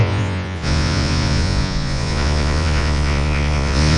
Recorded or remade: remade